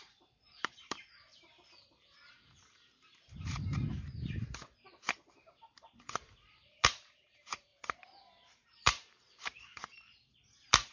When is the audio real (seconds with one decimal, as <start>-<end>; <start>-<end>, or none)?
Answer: 7.7-8.3